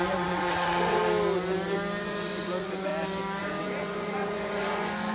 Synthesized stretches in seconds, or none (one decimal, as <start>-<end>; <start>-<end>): 0.0-1.0; 2.0-2.9; 3.4-5.1